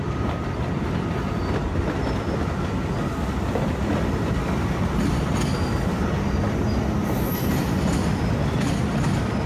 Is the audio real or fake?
real